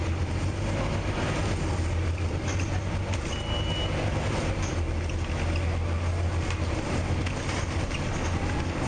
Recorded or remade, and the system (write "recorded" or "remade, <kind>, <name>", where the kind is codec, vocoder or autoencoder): recorded